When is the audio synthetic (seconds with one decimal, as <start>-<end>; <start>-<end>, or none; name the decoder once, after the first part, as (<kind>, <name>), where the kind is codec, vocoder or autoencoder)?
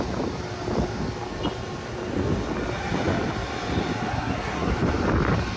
4.1-4.7 (codec, SNAC)